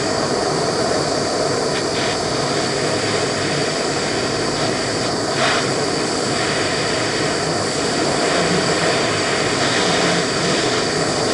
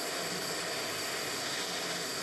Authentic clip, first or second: second